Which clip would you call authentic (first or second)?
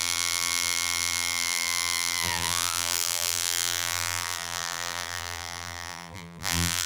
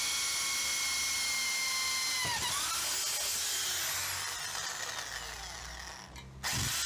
second